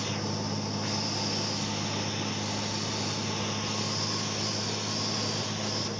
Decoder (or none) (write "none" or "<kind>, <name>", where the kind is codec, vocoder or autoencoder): none